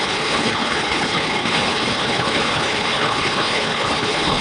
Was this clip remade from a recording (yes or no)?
yes